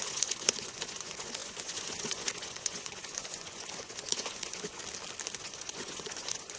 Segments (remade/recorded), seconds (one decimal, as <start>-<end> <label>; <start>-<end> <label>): 0.0-4.8 remade; 4.8-5.4 recorded; 5.4-6.6 remade